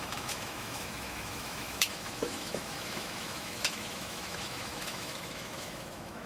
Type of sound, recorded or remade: remade